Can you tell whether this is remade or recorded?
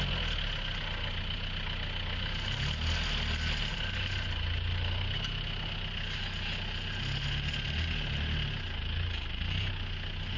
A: recorded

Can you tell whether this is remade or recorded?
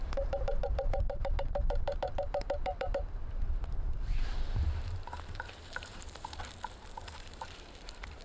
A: remade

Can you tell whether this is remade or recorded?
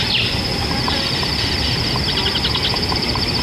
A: recorded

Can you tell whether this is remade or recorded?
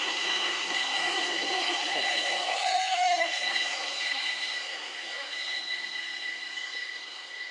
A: remade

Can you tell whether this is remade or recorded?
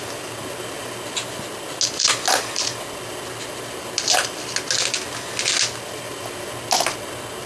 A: recorded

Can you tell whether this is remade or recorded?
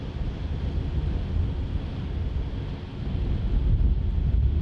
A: recorded